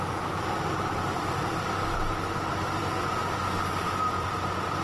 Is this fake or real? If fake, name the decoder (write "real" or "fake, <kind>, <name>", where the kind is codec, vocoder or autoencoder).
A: fake, vocoder, BigVGAN v2